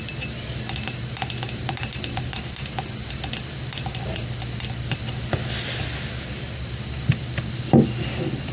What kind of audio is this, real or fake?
real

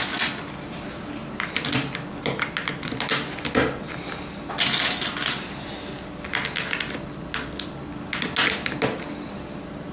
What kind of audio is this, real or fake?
real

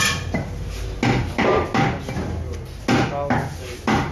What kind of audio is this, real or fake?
real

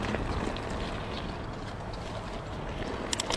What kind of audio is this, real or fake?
real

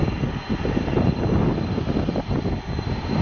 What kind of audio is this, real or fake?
real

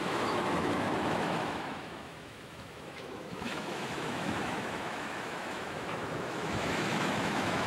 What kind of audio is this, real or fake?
fake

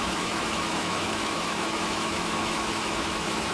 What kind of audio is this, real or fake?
fake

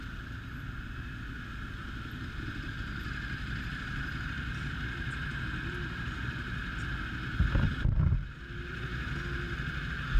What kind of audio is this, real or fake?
real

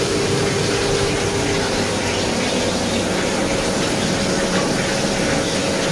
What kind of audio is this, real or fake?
real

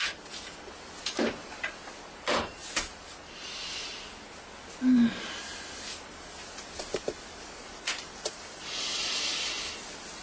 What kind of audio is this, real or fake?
real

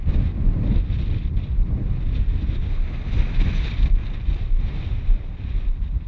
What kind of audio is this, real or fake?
fake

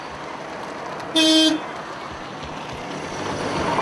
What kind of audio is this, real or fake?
real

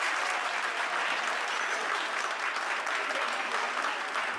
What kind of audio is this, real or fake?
real